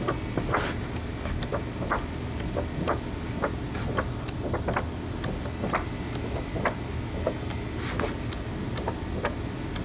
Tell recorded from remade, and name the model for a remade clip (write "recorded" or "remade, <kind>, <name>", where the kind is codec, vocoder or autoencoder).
recorded